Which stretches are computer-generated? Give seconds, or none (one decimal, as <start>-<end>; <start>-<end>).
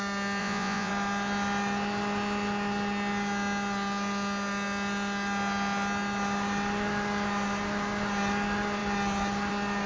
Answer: 0.4-0.9